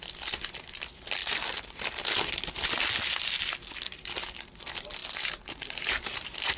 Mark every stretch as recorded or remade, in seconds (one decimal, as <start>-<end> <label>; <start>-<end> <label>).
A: 0.0-6.6 recorded

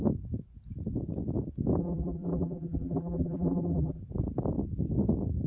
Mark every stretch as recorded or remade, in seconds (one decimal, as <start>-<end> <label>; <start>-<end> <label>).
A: 0.0-1.8 recorded; 1.8-4.0 remade; 4.0-5.5 recorded

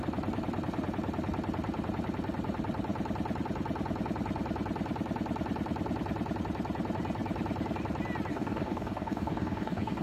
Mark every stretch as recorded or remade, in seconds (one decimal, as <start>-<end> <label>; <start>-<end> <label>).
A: 0.0-8.3 recorded; 8.3-10.0 remade

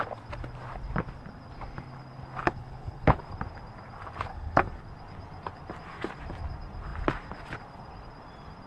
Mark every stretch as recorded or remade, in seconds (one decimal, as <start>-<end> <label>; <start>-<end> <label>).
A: 0.0-2.4 recorded; 2.4-3.2 remade; 3.2-4.3 recorded; 4.3-4.8 remade; 4.8-8.7 recorded

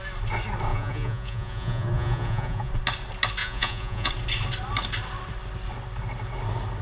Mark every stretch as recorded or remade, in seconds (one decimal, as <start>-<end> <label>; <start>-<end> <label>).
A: 0.0-0.7 recorded; 0.7-2.7 remade; 2.7-3.4 recorded; 3.4-4.1 remade; 4.1-6.8 recorded